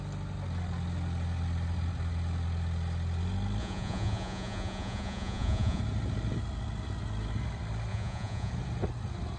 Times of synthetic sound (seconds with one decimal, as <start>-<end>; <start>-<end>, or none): 3.6-5.8; 7.9-8.5